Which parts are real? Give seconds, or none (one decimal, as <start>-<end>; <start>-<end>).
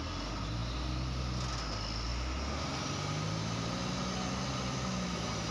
0.0-5.5